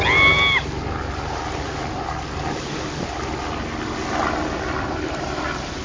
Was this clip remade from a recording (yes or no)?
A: no